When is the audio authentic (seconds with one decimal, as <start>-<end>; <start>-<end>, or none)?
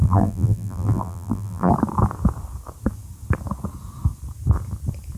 1.7-5.2